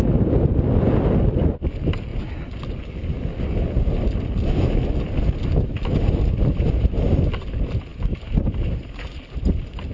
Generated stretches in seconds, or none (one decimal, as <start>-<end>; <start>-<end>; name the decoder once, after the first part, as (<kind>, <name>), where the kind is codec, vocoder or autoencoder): none